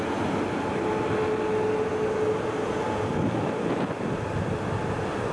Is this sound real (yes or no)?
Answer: yes